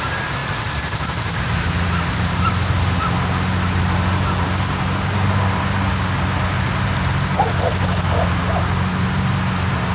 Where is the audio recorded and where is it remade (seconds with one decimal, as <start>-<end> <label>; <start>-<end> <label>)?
0.0-9.9 recorded